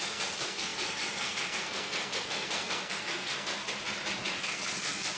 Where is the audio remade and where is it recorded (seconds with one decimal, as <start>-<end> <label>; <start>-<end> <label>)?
0.0-3.6 remade; 3.6-4.4 recorded; 4.4-5.2 remade

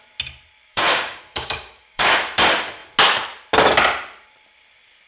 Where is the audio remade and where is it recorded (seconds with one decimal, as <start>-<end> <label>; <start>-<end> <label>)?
0.0-0.7 recorded; 0.7-2.1 remade; 2.1-5.1 recorded

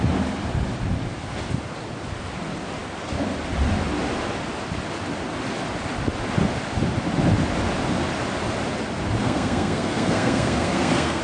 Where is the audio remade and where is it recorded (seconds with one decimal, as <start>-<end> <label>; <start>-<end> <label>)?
0.0-9.2 recorded; 9.2-11.2 remade

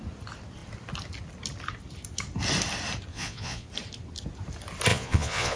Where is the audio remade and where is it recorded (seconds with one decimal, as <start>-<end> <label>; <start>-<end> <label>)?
0.0-3.1 recorded; 3.1-3.7 remade; 3.7-4.9 recorded; 4.9-5.6 remade

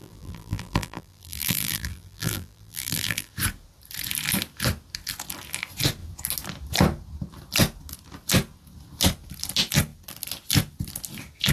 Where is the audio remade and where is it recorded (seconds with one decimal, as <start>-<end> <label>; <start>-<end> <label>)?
0.0-3.3 remade; 3.3-11.5 recorded

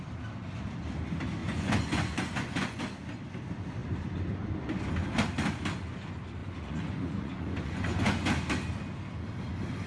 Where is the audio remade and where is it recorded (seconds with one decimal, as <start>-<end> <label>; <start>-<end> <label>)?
0.0-1.4 recorded; 1.4-2.8 remade; 2.8-6.4 recorded; 6.4-8.3 remade; 8.3-9.9 recorded